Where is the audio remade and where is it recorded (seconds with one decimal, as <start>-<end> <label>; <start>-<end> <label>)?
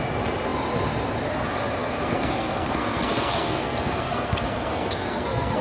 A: 0.0-1.8 recorded; 1.8-5.6 remade